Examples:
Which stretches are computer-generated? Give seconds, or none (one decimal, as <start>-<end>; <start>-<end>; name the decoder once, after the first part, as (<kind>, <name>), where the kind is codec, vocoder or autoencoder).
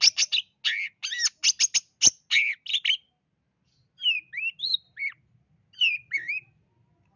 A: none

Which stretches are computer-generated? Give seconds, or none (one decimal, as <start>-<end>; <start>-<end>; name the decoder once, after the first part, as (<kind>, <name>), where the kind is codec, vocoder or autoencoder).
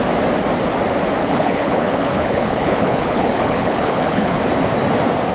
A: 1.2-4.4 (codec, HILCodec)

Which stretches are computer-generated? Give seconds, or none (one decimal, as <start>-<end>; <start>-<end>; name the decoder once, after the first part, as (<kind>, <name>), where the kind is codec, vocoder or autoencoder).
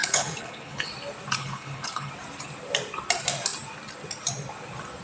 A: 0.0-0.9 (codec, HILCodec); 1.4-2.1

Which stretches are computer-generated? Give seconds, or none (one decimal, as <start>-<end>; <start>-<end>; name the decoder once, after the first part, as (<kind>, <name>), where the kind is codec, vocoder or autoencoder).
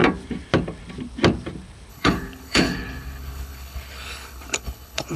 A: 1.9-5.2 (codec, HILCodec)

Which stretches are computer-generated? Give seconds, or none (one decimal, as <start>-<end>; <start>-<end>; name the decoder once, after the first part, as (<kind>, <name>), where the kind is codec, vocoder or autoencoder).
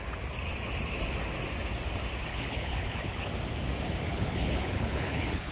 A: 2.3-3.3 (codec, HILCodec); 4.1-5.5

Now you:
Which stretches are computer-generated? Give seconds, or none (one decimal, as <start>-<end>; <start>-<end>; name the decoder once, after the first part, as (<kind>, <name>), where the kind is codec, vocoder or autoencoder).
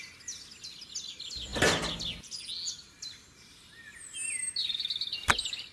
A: none